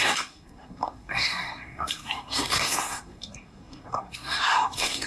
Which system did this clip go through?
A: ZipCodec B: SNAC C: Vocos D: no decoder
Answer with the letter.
B